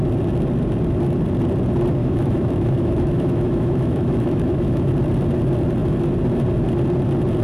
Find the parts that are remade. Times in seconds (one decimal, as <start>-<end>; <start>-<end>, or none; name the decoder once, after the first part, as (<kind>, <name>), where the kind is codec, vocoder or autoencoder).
2.0-4.9 (autoencoder, DAC-VAE)